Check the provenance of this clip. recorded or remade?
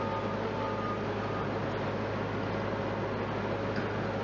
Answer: recorded